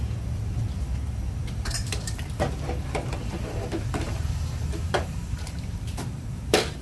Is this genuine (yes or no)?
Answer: no